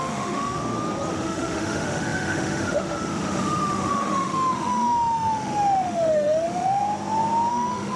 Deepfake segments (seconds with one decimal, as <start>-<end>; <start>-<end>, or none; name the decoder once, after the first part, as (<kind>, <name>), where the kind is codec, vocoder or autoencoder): 0.0-0.6 (autoencoder, DAC-VAE); 1.1-6.8; 7.5-8.0